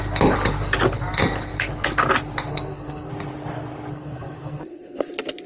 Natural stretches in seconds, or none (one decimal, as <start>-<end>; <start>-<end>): 0.0-2.5; 3.1-3.9; 5.0-5.5